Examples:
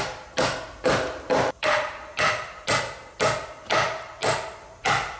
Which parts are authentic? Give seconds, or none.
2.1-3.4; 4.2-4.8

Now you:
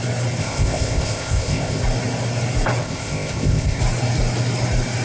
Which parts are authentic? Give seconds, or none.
0.0-0.4; 1.8-2.8; 3.8-5.0